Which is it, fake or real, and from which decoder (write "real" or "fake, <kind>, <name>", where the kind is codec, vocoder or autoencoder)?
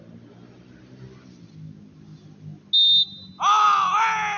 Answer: real